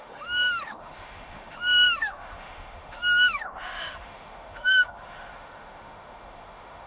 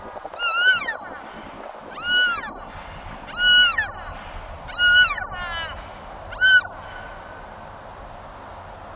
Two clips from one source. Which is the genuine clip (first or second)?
second